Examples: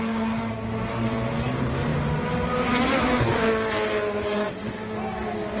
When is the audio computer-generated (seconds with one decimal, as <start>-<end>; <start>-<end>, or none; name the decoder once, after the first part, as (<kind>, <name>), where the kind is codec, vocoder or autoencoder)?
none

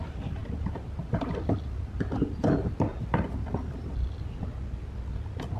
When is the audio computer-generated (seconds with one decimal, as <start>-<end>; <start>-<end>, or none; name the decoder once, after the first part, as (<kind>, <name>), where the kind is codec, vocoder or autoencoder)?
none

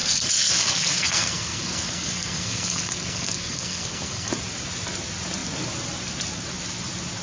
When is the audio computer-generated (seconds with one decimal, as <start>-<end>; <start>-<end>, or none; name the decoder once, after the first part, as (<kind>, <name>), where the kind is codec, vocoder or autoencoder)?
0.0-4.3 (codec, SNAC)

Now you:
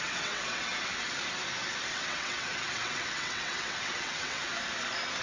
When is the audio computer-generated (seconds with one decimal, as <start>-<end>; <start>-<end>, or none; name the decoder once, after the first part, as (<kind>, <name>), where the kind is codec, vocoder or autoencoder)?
0.0-0.7 (vocoder, WaveNeXt); 1.9-4.4